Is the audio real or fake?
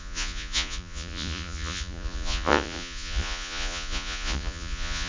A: fake